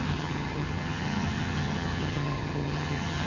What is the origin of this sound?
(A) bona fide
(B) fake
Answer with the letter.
B